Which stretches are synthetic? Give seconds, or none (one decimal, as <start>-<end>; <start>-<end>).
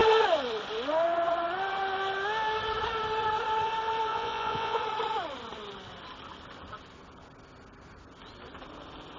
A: 4.1-4.8